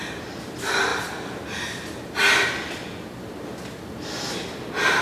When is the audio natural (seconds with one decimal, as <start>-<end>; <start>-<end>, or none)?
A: 0.0-5.0